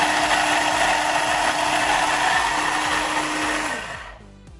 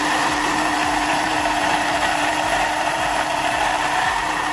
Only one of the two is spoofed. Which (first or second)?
second